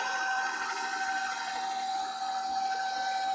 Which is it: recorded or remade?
recorded